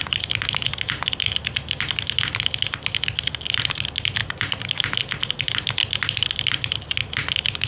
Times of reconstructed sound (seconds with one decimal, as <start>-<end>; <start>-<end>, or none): none

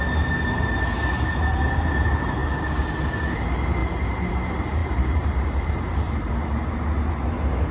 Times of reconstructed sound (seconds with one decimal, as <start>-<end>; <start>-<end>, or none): 3.8-4.3; 4.8-6.3

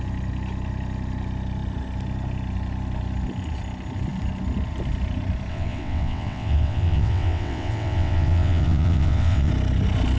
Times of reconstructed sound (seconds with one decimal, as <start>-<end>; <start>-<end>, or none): 5.5-9.5

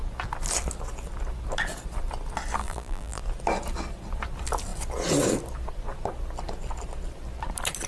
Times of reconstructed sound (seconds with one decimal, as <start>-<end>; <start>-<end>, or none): 2.6-3.2

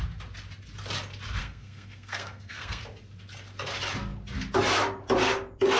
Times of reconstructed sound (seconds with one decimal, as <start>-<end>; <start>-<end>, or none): 1.4-2.8